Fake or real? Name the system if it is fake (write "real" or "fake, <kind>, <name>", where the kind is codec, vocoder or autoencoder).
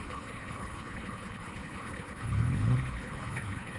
fake, codec, HILCodec